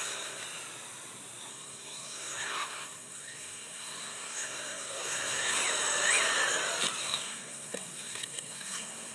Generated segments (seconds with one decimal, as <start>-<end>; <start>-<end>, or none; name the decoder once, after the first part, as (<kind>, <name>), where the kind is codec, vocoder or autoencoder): 0.0-0.4 (codec, SNAC); 1.5-5.6; 7.0-9.1